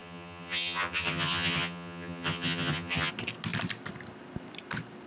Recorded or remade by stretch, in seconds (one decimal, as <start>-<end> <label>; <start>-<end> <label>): 0.0-3.1 remade; 3.1-5.1 recorded

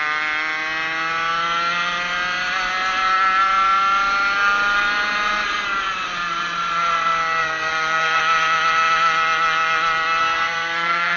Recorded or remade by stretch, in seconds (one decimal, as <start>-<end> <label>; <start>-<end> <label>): 0.0-7.4 recorded; 7.4-8.2 remade; 8.2-10.2 recorded; 10.2-11.2 remade

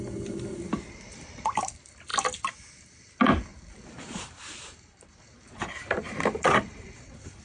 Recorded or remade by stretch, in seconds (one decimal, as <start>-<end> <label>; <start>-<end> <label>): 0.0-3.5 recorded; 3.5-7.4 remade